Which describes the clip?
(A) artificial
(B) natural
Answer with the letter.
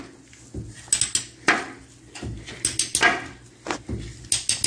B